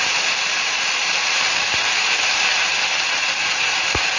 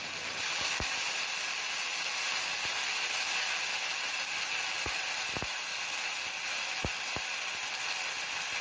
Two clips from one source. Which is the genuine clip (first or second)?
second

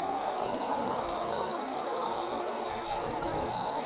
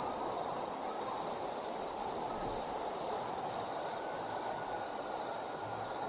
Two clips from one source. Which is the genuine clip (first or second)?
second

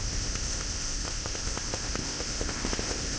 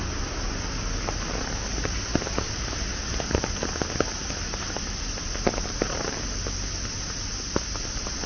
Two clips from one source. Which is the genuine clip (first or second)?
second